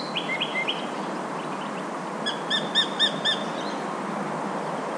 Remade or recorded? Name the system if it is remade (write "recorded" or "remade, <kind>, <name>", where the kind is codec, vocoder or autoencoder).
recorded